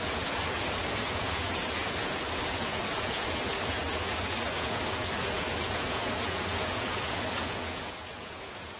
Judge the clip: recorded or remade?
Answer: remade